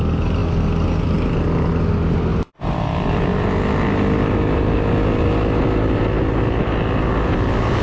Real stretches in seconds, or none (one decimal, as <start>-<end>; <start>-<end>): 0.0-7.8